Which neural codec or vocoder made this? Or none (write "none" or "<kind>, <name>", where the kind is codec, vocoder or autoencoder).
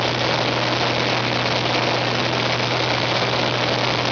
none